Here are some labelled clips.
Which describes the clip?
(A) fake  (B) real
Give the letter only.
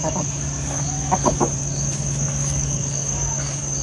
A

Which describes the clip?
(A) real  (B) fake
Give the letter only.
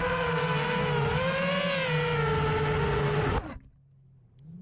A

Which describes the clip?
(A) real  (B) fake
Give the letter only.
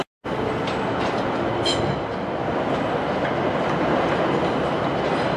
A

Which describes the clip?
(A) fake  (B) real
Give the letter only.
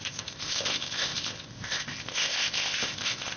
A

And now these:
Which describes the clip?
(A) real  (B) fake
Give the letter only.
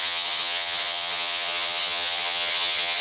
B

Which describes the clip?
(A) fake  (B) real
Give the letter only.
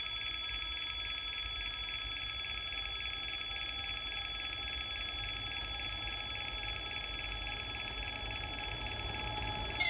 B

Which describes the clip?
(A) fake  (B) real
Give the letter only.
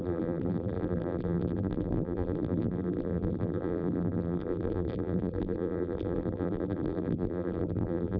A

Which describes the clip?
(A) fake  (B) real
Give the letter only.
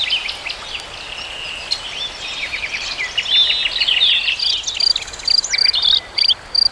B